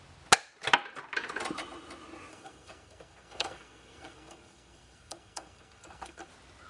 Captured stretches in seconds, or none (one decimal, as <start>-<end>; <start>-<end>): 0.0-2.3; 6.3-6.7